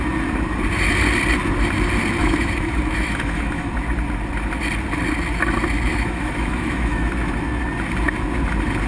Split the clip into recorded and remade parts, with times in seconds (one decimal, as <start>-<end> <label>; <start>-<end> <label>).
0.0-2.2 recorded; 2.2-3.7 remade; 3.7-5.9 recorded; 5.9-7.1 remade; 7.1-8.9 recorded